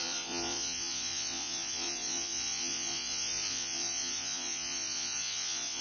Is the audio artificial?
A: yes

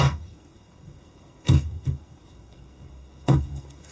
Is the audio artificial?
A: yes